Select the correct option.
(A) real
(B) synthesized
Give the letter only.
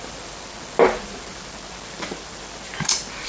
A